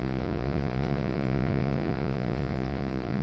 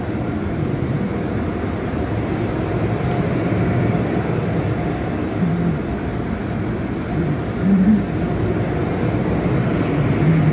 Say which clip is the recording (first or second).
second